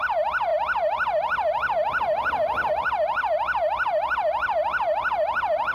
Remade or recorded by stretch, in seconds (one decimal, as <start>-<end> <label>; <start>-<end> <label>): 0.0-5.7 recorded